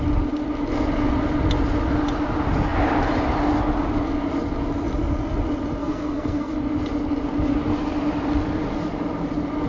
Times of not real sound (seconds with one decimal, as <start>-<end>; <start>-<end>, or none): 5.8-6.5